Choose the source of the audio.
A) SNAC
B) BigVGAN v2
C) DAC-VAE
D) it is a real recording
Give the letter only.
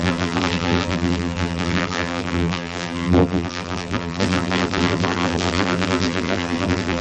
B